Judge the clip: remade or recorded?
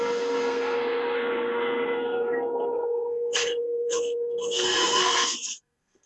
remade